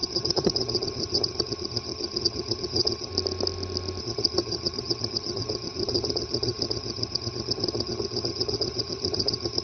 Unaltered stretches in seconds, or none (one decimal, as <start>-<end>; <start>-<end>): 3.1-4.0